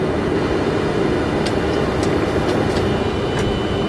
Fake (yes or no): no